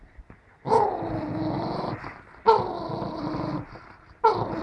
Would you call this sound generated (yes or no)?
no